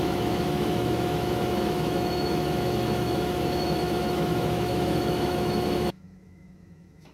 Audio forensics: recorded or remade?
remade